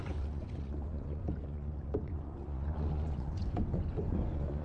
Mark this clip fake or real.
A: fake